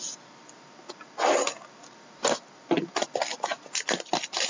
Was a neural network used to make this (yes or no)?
no